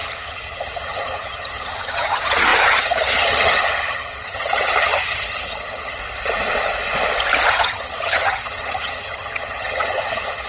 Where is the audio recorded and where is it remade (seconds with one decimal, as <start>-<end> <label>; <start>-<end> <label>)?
0.0-6.0 remade; 6.0-7.5 recorded; 7.5-10.5 remade

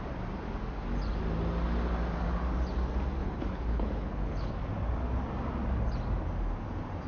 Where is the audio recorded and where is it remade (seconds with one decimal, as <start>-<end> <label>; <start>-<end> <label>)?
0.0-3.2 recorded; 3.2-4.5 remade; 4.5-7.1 recorded

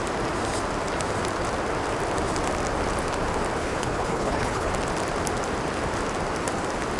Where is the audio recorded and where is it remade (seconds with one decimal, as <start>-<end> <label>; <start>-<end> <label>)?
0.0-3.6 recorded; 3.6-4.7 remade; 4.7-7.0 recorded

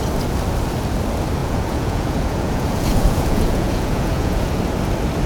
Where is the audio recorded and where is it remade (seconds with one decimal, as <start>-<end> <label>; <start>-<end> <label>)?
0.0-1.4 recorded; 1.4-4.6 remade; 4.6-5.3 recorded